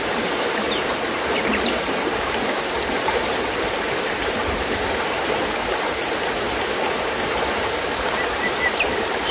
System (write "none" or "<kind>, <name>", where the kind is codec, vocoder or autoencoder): vocoder, BigVGAN v2